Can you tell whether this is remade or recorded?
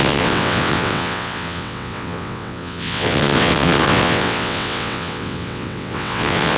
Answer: remade